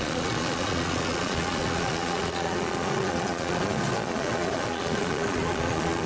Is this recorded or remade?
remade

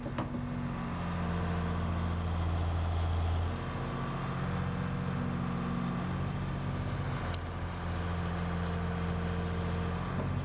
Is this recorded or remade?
recorded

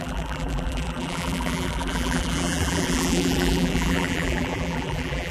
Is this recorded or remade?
remade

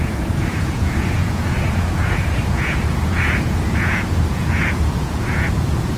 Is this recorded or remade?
remade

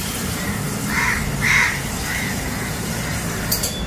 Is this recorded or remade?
remade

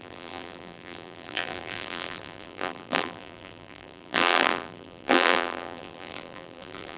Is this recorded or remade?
remade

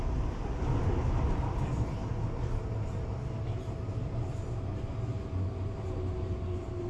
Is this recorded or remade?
recorded